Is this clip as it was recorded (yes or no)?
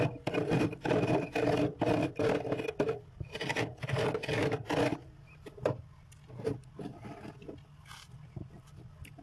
yes